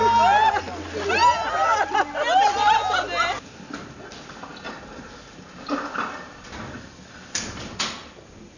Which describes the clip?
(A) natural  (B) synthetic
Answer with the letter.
A